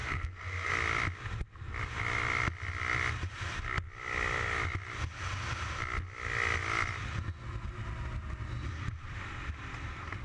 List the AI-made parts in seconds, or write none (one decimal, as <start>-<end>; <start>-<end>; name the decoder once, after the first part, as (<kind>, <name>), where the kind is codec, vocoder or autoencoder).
0.0-0.7 (codec, SNAC)